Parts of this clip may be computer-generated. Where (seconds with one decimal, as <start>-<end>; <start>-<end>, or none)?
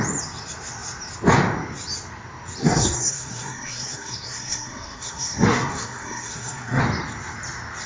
2.6-6.8